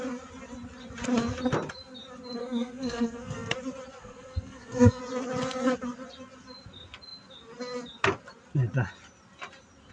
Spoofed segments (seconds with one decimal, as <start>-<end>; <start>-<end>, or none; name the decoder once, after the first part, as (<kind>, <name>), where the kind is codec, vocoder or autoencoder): 2.4-3.5 (codec, SNAC); 4.0-5.0